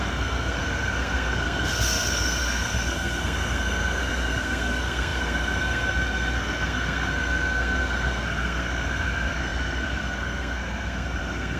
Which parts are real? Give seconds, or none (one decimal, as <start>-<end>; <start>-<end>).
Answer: none